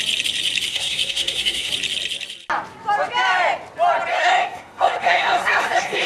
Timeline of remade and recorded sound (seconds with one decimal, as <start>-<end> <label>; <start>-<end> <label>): 0.0-0.7 recorded; 0.7-1.7 remade; 1.7-4.1 recorded; 4.1-6.1 remade